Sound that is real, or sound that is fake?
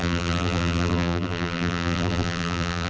fake